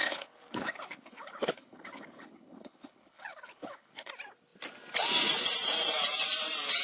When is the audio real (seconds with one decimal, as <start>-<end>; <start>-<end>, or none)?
4.1-6.8